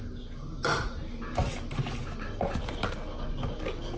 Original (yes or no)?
yes